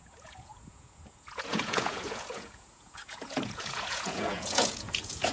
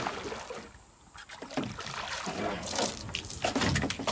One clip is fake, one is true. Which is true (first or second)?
second